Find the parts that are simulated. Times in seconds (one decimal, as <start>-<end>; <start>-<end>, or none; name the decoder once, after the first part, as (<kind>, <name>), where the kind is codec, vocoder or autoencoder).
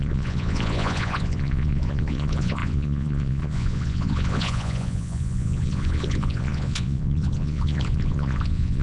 0.0-8.8 (vocoder, Vocos)